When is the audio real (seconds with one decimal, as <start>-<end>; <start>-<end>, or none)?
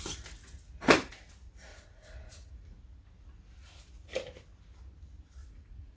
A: 0.0-1.7; 2.8-5.4